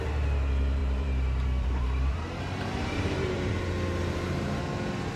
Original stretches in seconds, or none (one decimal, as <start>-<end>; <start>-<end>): 0.0-0.8; 3.5-4.0; 4.6-5.2